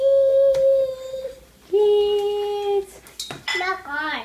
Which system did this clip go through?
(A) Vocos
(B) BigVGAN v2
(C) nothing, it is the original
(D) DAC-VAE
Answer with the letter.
C